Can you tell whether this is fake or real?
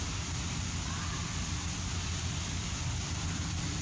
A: fake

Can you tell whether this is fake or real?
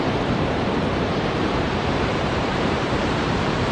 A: fake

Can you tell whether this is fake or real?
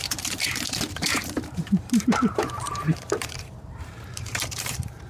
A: fake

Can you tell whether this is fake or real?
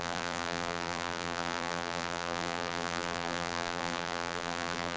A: fake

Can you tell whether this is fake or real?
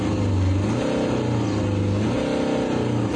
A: real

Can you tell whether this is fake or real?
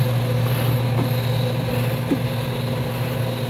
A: real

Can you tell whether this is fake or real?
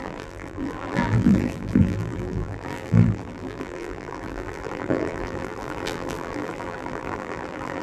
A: fake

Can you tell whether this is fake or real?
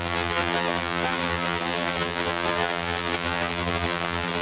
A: fake